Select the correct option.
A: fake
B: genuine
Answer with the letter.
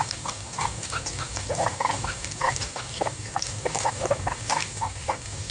A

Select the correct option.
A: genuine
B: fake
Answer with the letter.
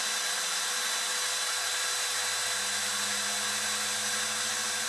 A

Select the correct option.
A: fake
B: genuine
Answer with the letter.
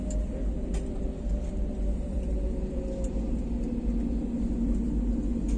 B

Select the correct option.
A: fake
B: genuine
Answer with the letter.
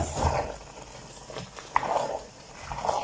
B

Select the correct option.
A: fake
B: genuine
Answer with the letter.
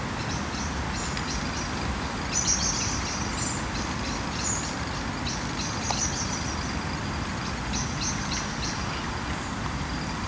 B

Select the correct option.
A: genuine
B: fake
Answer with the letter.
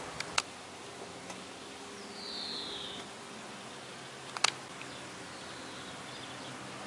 A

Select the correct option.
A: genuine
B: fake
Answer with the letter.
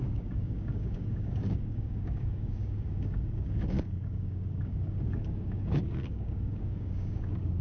B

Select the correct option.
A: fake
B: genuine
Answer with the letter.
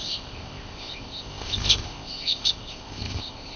A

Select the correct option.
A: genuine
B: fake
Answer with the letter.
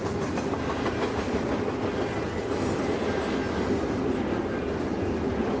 A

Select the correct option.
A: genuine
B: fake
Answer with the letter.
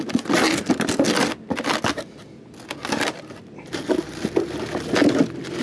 A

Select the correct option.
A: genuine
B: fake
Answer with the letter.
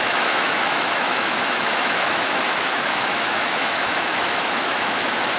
B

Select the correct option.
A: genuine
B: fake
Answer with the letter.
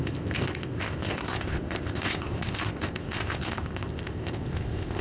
B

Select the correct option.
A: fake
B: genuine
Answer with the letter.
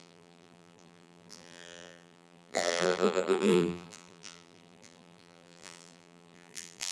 A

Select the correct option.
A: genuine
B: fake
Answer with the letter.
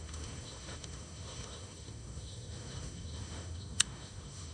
B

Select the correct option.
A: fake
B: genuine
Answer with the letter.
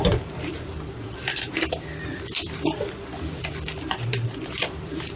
A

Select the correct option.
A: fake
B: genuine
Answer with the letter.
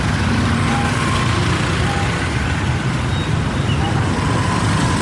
B